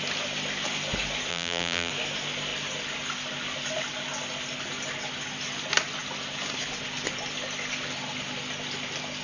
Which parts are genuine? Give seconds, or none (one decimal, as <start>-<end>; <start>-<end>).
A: 0.0-1.3; 1.9-9.2